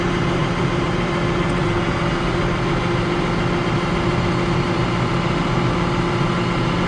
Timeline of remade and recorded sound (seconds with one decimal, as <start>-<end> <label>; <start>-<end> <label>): 0.0-6.9 recorded